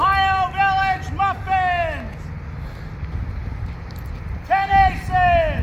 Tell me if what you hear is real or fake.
real